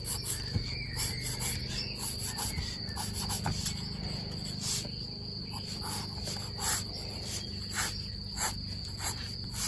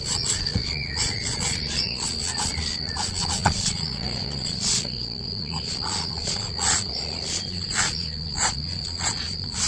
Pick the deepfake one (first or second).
second